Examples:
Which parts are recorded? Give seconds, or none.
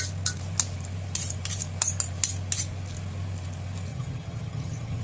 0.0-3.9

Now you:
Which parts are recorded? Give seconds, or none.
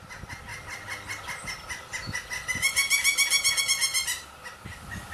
0.0-5.1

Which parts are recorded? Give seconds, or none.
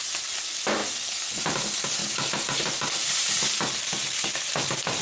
0.0-5.0